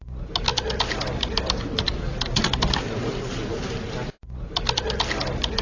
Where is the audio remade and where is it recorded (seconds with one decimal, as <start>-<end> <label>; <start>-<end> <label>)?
0.0-5.6 recorded

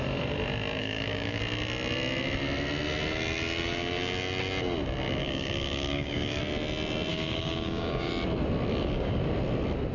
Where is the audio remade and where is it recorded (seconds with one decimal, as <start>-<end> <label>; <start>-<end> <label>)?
0.0-0.8 recorded; 0.8-1.4 remade; 1.4-5.2 recorded; 5.2-6.4 remade; 6.4-7.1 recorded; 7.1-8.1 remade; 8.1-8.7 recorded; 8.7-9.2 remade; 9.2-9.9 recorded

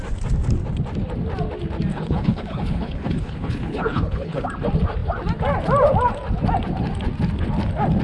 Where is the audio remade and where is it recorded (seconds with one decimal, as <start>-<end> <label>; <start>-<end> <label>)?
0.0-1.9 recorded; 1.9-4.5 remade; 4.5-8.0 recorded